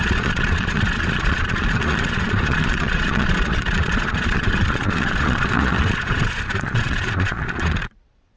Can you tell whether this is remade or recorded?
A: remade